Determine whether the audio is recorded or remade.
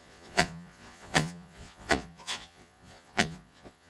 remade